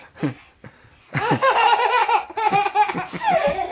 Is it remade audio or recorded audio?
remade